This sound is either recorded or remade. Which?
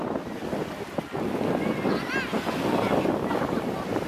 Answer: recorded